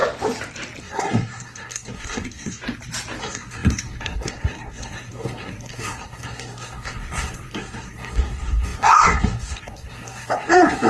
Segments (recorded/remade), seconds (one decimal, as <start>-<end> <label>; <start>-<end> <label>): 0.0-0.8 recorded; 0.8-2.6 remade; 2.6-3.2 recorded; 3.2-10.9 remade